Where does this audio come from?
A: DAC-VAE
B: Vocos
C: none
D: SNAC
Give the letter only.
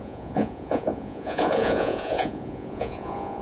B